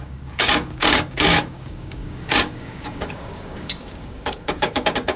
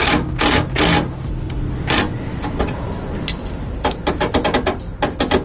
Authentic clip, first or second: second